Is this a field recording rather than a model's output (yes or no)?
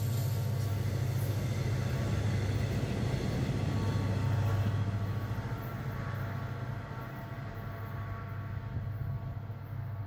yes